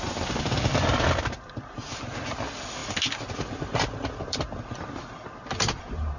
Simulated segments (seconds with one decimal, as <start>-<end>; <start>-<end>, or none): none